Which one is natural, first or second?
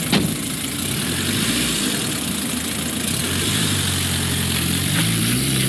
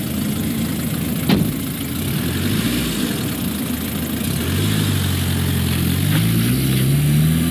second